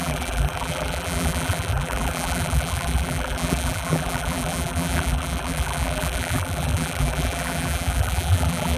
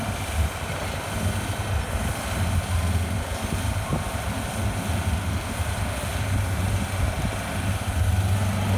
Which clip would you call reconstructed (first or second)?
first